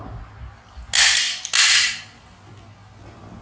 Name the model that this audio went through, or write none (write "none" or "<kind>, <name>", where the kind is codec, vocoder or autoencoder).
none